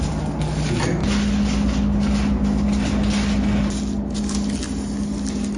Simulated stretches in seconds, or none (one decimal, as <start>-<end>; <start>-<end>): none